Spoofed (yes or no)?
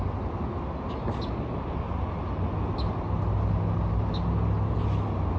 no